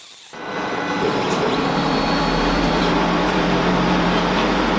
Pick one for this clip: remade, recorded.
remade